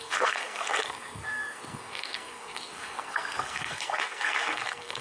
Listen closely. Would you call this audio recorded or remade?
remade